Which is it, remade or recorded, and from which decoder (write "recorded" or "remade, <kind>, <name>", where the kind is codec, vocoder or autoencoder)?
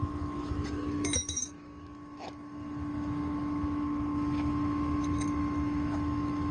remade, autoencoder, DAC-VAE